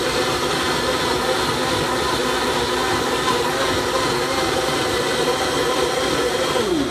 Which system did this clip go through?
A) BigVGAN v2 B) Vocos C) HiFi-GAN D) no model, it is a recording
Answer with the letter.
D